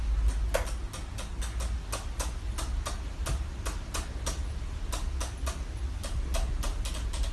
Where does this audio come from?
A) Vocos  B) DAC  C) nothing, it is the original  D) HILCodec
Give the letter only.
C